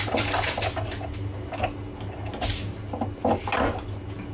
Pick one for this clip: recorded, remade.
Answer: recorded